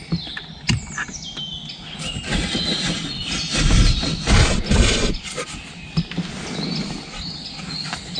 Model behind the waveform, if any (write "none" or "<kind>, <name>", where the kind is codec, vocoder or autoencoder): none